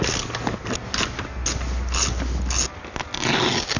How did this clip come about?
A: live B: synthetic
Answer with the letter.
A